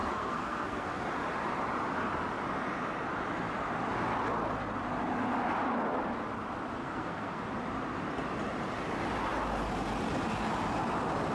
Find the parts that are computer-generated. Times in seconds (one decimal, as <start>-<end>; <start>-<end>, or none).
0.0-1.0; 6.8-7.4